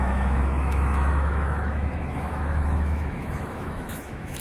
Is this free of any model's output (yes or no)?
no